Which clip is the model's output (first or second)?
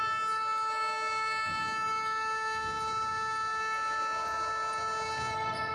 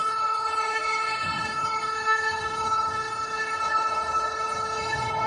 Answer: second